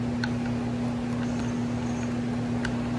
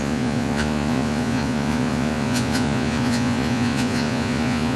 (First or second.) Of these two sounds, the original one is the first